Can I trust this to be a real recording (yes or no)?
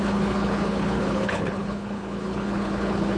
no